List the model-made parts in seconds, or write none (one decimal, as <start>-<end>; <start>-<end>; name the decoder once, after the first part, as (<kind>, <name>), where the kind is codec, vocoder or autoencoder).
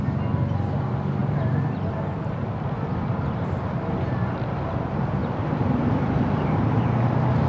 5.2-6.8 (vocoder, BigVGAN v2)